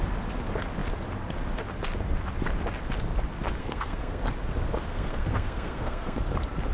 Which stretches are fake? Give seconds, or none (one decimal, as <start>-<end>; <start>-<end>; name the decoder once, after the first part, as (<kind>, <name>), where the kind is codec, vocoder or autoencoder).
3.6-4.3 (codec, SNAC); 4.9-6.2